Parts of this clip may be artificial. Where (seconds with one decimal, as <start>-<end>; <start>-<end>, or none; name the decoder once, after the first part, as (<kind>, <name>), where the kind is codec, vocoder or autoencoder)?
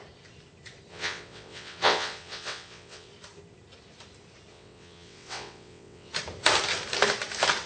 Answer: 0.9-3.1 (vocoder, WaveNeXt); 4.5-6.1